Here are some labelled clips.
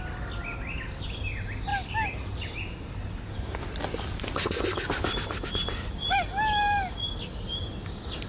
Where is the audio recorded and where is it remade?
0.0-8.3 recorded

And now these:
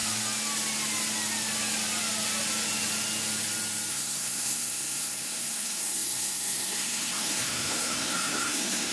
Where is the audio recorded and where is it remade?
0.0-3.9 recorded; 3.9-8.9 remade